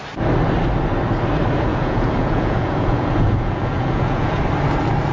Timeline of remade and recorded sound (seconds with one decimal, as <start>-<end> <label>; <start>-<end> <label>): 0.0-1.7 recorded; 1.7-4.4 remade; 4.4-5.1 recorded